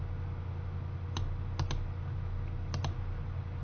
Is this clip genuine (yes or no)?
yes